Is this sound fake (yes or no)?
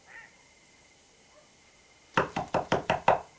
no